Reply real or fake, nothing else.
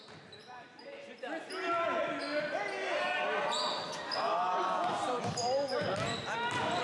real